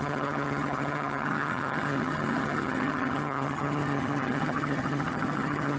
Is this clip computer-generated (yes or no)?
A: yes